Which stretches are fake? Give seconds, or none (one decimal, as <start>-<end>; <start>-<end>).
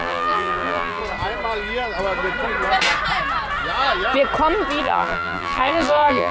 0.0-1.0; 4.8-6.3